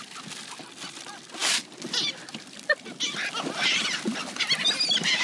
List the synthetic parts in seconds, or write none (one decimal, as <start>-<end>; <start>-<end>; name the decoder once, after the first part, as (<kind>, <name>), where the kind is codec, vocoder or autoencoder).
none